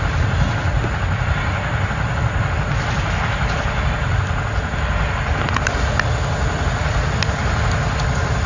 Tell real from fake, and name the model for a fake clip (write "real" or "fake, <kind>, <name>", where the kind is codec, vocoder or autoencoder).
real